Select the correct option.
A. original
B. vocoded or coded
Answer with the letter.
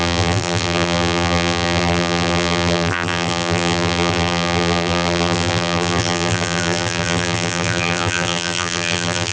B